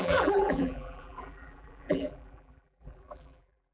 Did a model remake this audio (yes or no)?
yes